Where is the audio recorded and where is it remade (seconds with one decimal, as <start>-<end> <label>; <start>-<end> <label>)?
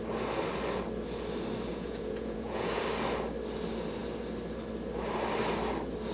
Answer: 0.0-1.7 recorded; 1.7-2.8 remade; 2.8-6.1 recorded